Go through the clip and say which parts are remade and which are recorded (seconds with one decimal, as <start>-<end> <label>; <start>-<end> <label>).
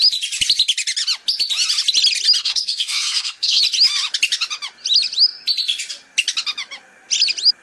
0.0-2.4 recorded; 2.4-3.6 remade; 3.6-7.6 recorded